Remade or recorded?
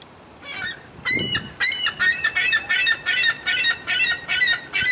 recorded